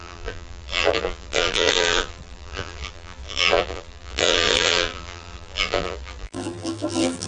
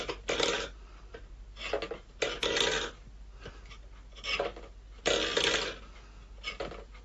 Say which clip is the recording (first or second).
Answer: second